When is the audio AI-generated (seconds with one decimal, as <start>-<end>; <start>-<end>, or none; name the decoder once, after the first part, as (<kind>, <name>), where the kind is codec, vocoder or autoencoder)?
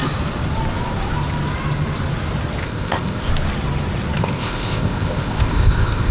2.6-3.3 (codec, ZipCodec); 4.2-6.1